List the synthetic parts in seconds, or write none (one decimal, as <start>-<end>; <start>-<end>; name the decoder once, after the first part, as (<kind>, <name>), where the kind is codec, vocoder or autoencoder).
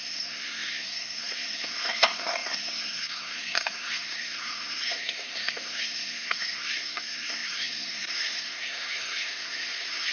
0.0-10.1 (codec, SNAC)